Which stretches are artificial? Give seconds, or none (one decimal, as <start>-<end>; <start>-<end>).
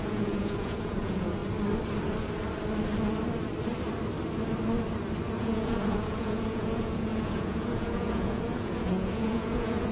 0.0-1.4; 5.4-9.9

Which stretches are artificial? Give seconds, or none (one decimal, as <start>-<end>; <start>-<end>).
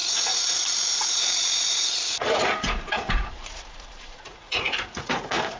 0.0-5.6